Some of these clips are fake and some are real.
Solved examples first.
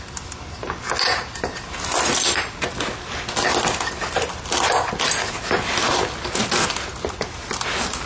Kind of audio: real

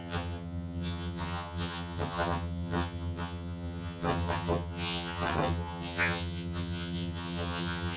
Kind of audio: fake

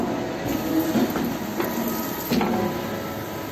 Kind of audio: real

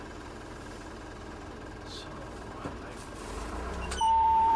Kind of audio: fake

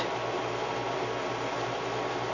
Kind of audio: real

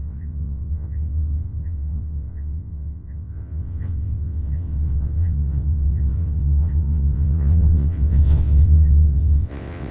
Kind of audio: fake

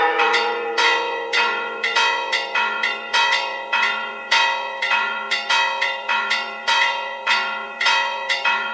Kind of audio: fake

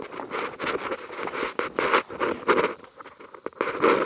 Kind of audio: real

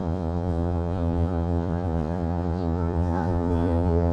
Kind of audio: fake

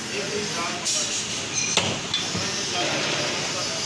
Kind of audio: real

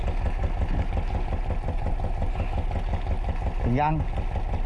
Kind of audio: real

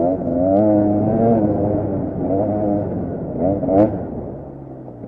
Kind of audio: real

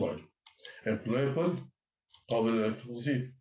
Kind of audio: real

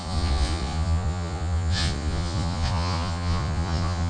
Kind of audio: fake